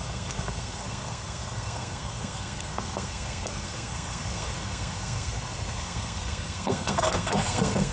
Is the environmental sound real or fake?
fake